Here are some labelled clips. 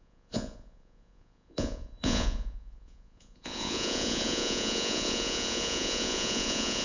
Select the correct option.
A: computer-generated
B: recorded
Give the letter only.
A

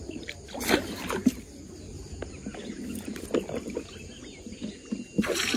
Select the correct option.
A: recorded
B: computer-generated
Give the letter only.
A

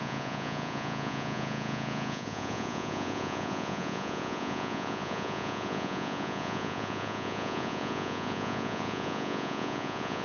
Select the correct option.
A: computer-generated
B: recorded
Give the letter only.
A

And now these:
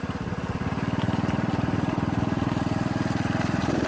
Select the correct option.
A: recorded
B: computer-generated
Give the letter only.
A